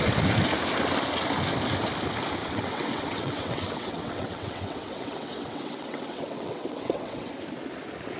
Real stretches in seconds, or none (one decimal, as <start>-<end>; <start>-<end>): 0.0-2.4; 7.3-8.2